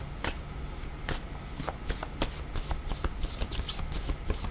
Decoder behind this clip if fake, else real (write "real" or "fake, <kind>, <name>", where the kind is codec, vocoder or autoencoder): real